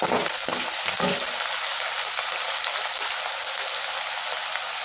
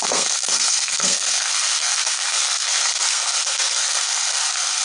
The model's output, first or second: second